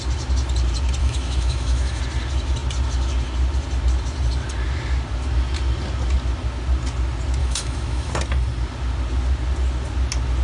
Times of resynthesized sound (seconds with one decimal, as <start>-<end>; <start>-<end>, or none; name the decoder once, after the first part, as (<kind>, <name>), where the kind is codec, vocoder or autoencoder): 1.0-2.0 (autoencoder, DAC-VAE); 7.4-8.1